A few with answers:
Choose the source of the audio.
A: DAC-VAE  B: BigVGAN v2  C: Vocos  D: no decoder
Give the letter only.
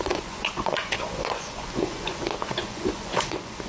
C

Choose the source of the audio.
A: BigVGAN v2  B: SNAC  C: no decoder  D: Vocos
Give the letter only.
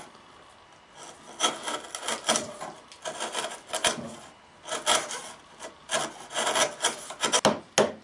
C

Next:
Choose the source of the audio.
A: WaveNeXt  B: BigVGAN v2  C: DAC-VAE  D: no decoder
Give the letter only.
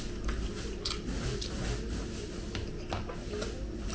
D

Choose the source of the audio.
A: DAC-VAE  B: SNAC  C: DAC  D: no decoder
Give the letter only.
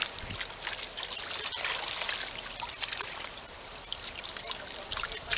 D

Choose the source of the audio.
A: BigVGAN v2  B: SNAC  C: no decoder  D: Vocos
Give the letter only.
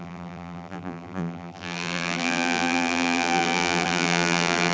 A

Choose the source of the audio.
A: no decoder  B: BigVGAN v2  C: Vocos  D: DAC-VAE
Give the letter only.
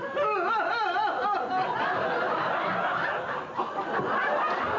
A